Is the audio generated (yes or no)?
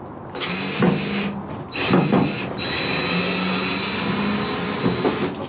no